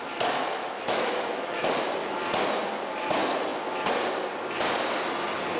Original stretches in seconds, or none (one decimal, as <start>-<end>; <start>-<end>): 0.0-0.4; 1.7-5.6